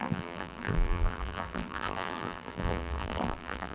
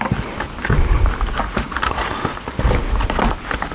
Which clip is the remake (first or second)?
first